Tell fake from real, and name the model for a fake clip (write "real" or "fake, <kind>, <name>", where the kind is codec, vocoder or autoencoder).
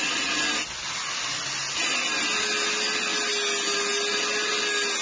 real